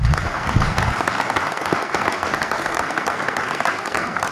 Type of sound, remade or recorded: remade